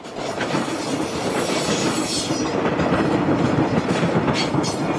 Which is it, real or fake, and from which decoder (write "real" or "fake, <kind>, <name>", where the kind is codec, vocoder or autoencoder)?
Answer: real